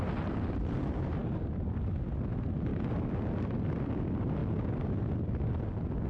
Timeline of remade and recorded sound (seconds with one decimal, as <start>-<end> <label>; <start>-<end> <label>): 0.0-4.4 remade; 4.4-6.1 recorded